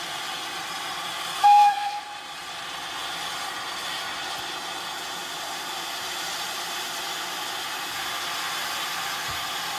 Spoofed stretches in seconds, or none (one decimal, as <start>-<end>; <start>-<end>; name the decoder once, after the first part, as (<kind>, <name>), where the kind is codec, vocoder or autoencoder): 1.4-2.0 (codec, SNAC)